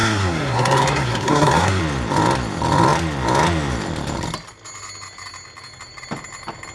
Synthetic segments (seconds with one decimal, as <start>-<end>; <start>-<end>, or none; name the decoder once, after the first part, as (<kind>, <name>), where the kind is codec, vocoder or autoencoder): 0.0-1.8 (codec, SNAC)